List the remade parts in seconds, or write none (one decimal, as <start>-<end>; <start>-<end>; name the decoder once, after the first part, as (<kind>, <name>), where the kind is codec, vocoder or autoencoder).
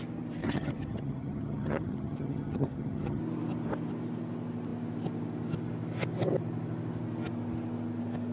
0.4-3.2 (vocoder, HiFi-GAN)